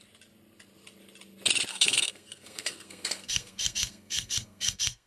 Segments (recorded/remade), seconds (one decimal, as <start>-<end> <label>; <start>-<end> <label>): 0.0-1.7 recorded; 1.7-5.1 remade